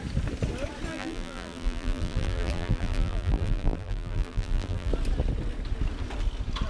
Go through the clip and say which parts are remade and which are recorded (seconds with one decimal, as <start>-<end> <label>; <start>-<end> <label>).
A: 0.0-0.9 recorded; 0.9-4.9 remade; 4.9-6.7 recorded